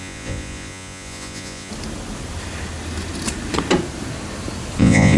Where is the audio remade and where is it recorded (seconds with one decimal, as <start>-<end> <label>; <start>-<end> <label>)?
0.0-1.7 remade; 1.7-4.8 recorded; 4.8-5.2 remade